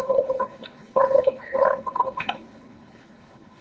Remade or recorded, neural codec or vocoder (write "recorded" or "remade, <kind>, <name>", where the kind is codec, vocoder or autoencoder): remade, codec, HILCodec